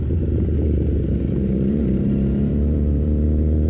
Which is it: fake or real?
fake